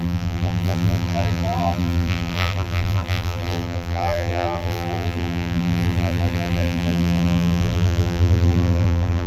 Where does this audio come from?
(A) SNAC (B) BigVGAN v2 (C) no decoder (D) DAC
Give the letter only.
B